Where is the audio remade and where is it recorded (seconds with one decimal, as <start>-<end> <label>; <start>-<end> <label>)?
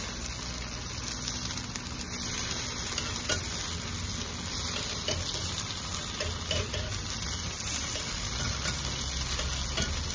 0.0-10.1 recorded